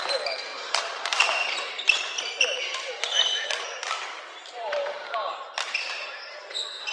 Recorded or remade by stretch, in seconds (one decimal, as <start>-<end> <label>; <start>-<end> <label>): 0.0-6.9 remade